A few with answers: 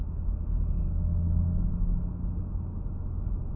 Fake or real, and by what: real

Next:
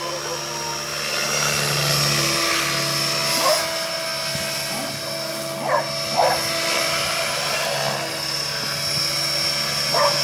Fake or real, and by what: real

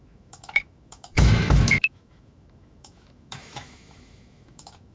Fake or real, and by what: fake, autoencoder, DAC-VAE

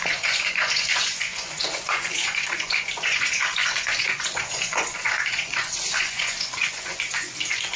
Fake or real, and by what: fake, vocoder, Vocos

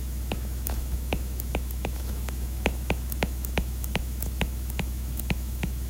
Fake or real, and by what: fake, autoencoder, DAC-VAE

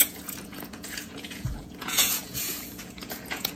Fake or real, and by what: fake, vocoder, Vocos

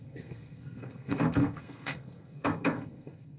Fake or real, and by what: fake, codec, SNAC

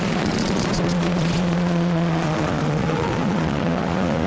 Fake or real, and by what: fake, vocoder, Vocos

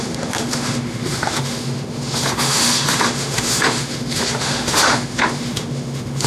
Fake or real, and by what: fake, autoencoder, DAC-VAE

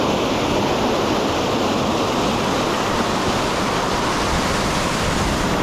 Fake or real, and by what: real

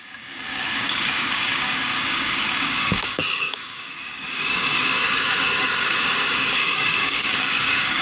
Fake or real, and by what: fake, codec, DAC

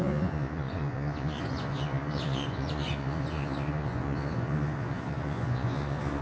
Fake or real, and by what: fake, vocoder, Vocos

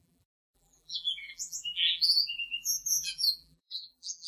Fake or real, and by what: fake, vocoder, BigVGAN v2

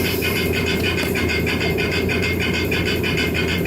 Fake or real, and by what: fake, vocoder, BigVGAN v2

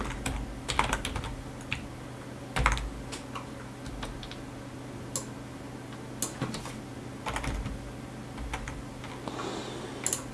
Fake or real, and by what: real